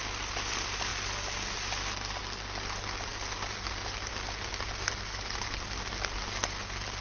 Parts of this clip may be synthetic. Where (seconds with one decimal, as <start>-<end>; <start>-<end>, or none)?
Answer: 5.1-5.6